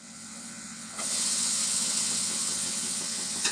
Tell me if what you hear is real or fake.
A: fake